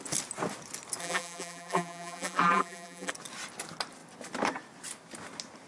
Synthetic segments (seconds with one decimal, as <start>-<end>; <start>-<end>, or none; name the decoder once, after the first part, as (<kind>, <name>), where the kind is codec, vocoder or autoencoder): 1.0-3.1 (vocoder, BigVGAN v2)